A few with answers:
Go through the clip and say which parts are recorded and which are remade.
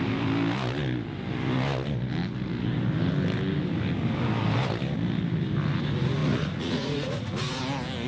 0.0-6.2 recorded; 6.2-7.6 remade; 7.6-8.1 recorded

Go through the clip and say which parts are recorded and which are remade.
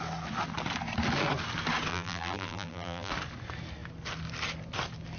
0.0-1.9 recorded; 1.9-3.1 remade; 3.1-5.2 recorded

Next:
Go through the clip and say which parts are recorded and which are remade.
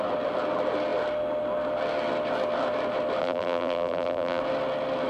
0.0-3.2 recorded; 3.2-4.4 remade; 4.4-5.1 recorded